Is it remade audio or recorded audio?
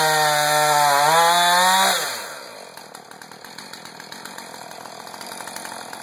recorded